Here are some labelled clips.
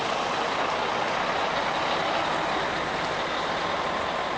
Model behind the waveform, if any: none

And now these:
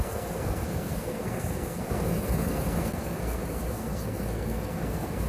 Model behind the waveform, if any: codec, SNAC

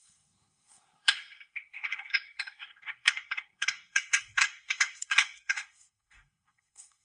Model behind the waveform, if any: codec, SNAC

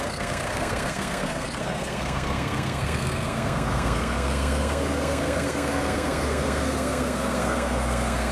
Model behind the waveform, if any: codec, SNAC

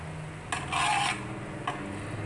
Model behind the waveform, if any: none